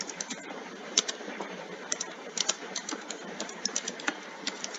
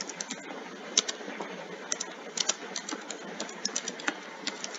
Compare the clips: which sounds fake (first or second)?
first